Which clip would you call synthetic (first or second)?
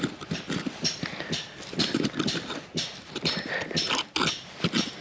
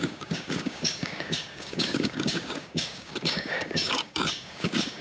second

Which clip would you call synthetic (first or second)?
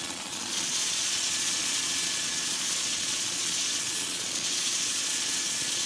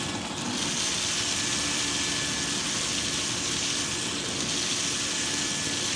first